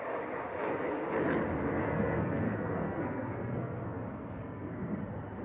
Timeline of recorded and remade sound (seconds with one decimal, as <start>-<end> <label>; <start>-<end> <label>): 0.0-1.8 recorded; 1.8-5.0 remade; 5.0-5.4 recorded